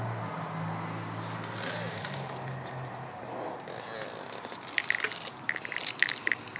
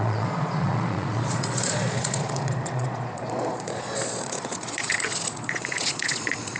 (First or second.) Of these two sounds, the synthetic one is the second